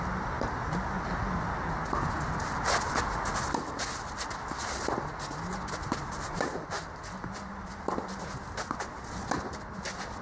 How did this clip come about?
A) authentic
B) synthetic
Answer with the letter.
A